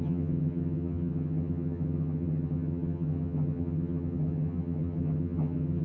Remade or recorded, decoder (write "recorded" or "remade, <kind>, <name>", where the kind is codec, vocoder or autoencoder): remade, vocoder, HiFi-GAN